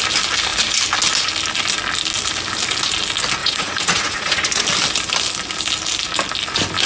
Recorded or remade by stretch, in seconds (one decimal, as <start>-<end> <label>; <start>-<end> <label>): 0.0-3.4 recorded; 3.4-4.6 remade; 4.6-6.9 recorded